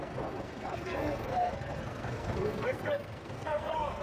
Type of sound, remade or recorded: remade